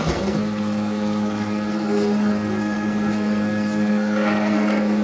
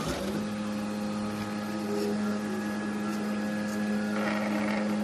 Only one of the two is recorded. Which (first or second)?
second